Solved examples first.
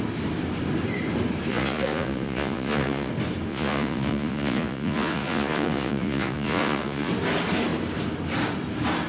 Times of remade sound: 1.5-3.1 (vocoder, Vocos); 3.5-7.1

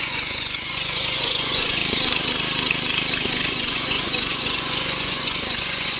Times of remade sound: 0.0-1.8 (vocoder, Vocos); 3.2-6.0

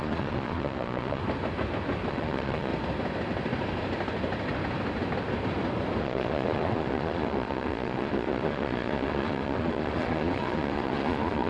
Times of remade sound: 0.0-1.2 (vocoder, Vocos); 2.1-2.7; 6.0-11.5

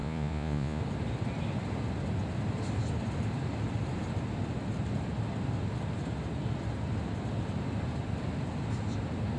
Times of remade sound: 0.0-0.8 (vocoder, Vocos)